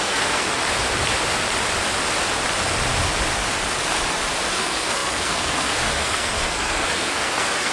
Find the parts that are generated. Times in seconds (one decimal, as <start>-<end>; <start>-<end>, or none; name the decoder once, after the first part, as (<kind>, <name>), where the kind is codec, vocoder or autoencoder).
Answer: 0.0-0.6 (codec, SNAC); 4.5-7.7